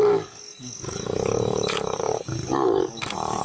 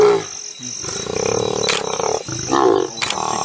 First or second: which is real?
second